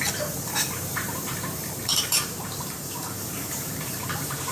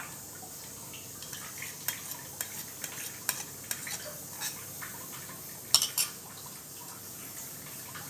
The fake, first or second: first